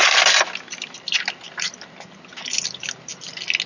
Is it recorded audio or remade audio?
recorded